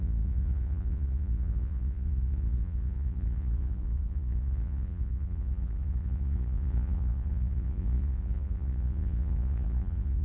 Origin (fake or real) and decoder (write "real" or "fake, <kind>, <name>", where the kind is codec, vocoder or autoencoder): fake, vocoder, Vocos